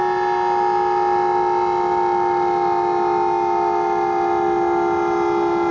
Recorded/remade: recorded